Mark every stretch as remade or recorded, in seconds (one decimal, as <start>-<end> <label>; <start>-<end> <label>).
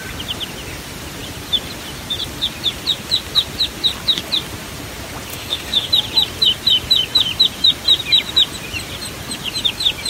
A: 0.0-5.3 recorded; 5.3-5.9 remade; 5.9-10.1 recorded